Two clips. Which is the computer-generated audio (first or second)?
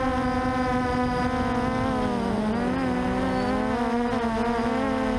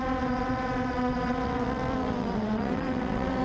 second